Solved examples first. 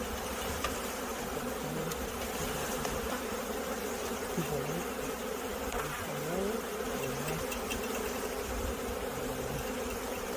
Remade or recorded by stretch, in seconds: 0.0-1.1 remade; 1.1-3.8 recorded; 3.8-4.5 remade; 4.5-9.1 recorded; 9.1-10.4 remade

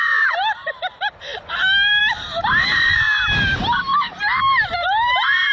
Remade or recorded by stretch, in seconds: 0.0-5.5 remade

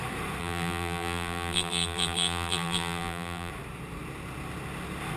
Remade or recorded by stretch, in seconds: 0.0-0.4 recorded; 0.4-3.5 remade; 3.5-5.2 recorded

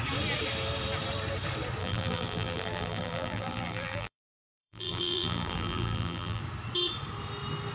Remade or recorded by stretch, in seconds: 0.0-1.8 recorded; 1.8-6.4 remade; 6.4-7.7 recorded

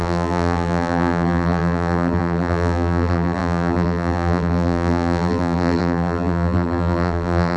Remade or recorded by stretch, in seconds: 0.0-7.6 remade

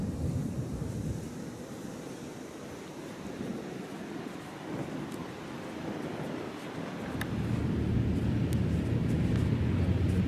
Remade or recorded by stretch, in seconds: 0.0-1.0 remade; 1.0-2.9 recorded; 2.9-3.8 remade; 3.8-10.3 recorded

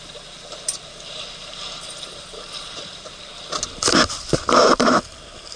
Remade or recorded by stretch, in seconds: 0.0-3.3 remade; 3.3-4.1 recorded; 4.1-5.6 remade

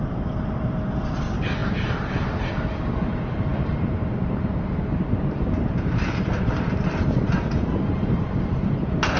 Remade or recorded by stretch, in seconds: 0.0-9.2 remade